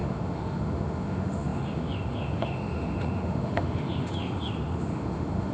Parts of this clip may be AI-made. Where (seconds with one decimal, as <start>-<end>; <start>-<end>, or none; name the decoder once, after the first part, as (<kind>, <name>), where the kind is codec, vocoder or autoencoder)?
0.0-5.5 (autoencoder, DAC-VAE)